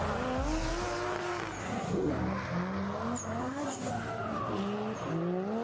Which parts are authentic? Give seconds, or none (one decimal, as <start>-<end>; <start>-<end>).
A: 0.0-1.6; 2.1-3.4; 3.9-5.6